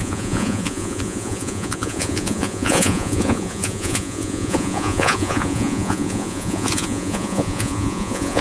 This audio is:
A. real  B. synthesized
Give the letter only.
B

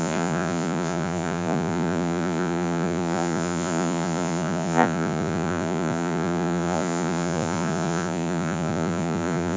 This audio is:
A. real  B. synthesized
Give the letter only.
B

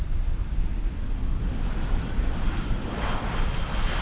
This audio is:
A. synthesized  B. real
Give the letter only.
B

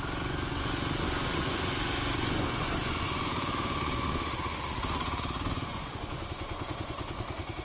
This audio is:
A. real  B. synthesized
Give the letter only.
B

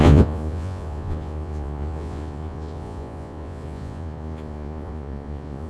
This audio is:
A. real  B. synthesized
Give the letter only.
B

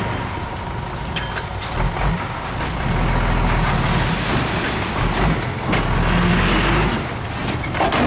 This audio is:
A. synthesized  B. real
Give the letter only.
B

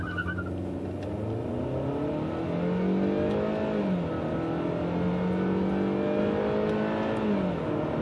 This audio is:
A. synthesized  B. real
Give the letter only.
B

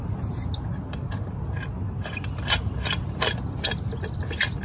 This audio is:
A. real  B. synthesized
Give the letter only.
A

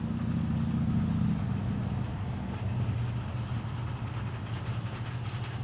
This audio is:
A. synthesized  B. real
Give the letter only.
B